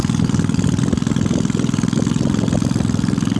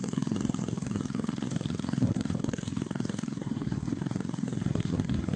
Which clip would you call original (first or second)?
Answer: first